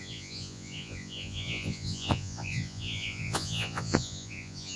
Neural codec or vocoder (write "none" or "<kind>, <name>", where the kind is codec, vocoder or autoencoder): vocoder, Vocos